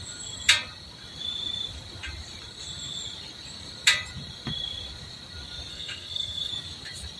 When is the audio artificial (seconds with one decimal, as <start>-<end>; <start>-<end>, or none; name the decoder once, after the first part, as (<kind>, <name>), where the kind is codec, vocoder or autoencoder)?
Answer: 5.7-6.5 (codec, SNAC)